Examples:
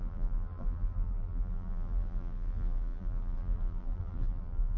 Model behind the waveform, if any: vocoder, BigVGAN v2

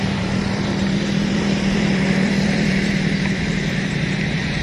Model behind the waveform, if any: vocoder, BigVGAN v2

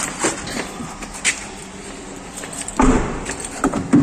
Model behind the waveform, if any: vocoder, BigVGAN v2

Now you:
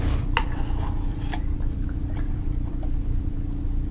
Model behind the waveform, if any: vocoder, BigVGAN v2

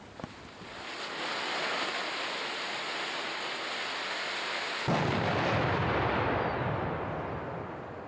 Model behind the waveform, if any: none